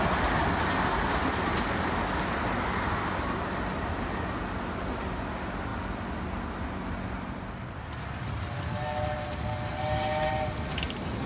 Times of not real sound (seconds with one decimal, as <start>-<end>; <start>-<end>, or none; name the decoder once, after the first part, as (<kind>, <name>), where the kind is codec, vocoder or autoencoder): none